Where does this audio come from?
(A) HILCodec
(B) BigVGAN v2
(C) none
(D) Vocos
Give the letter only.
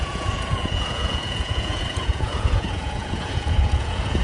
D